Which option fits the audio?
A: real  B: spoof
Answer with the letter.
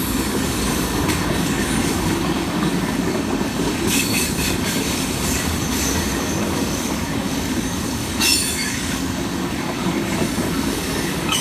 B